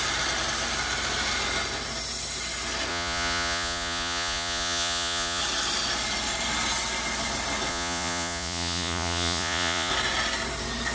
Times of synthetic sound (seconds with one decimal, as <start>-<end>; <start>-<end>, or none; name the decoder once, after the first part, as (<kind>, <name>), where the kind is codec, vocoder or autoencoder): 2.9-5.4 (vocoder, Vocos); 7.7-9.9